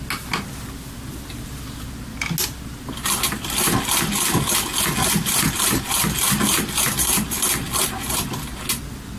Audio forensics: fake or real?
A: real